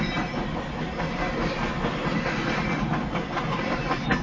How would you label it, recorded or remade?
recorded